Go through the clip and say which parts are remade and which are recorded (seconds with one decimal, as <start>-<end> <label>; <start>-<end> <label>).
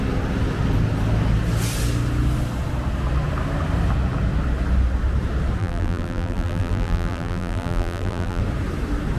0.0-5.6 recorded; 5.6-8.4 remade; 8.4-9.2 recorded